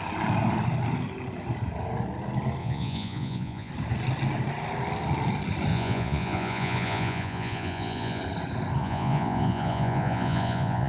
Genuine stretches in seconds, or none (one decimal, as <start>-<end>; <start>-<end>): 0.0-2.6; 3.7-5.7; 8.2-8.8